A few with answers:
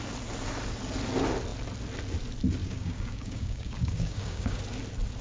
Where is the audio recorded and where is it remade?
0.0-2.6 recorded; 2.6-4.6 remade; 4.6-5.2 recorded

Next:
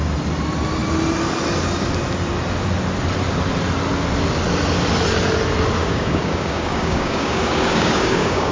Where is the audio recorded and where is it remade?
0.0-5.8 recorded; 5.8-8.5 remade

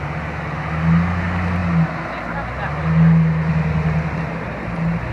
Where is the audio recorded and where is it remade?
0.0-5.1 recorded

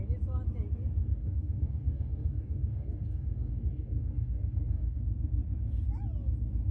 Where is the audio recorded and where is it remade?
0.0-1.0 recorded; 1.0-5.0 remade; 5.0-6.7 recorded

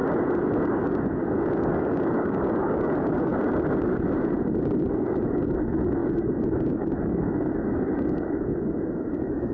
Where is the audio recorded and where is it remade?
0.0-0.6 recorded; 0.6-3.3 remade; 3.3-4.8 recorded; 4.8-9.5 remade

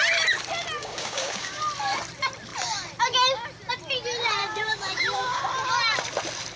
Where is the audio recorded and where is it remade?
0.0-0.8 recorded; 0.8-1.6 remade; 1.6-4.4 recorded; 4.4-5.4 remade; 5.4-6.6 recorded

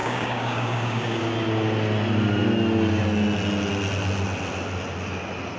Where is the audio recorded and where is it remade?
0.0-1.2 remade; 1.2-5.6 recorded

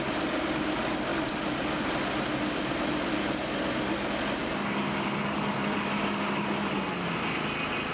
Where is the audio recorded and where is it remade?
0.0-4.4 recorded; 4.4-6.7 remade; 6.7-7.9 recorded